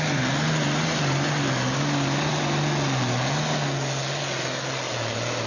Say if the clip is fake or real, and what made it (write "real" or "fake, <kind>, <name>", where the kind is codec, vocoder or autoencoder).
real